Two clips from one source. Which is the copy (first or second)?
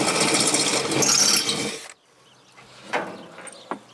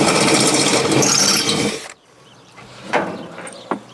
second